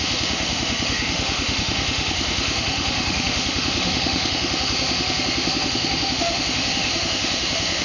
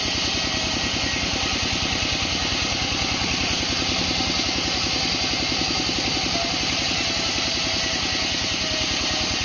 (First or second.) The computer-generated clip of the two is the first